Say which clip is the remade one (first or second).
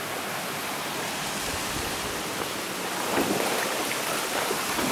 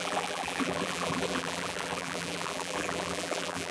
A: second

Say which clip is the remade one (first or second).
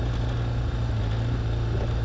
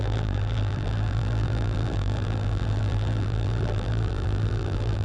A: second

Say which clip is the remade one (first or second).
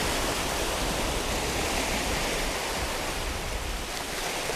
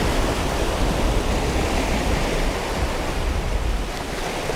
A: first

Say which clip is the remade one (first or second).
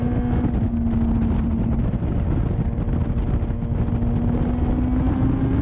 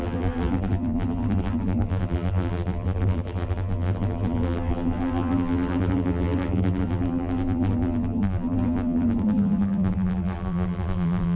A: second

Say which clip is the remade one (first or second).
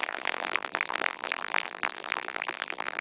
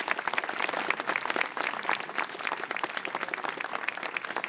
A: first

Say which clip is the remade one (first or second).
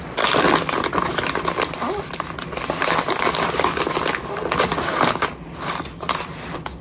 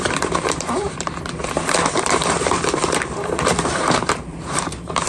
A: second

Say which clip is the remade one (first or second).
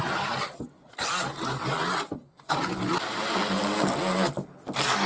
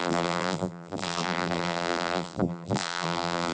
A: second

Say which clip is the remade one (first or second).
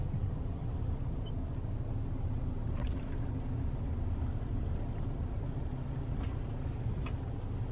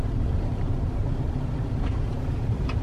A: second